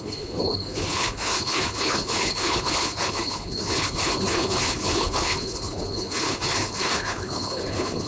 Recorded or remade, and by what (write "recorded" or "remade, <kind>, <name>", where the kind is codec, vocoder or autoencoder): remade, codec, HILCodec